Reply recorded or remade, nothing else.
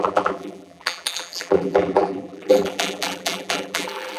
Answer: remade